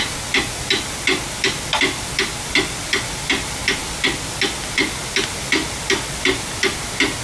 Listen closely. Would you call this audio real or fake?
real